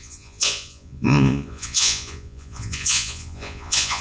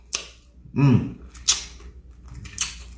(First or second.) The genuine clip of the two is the second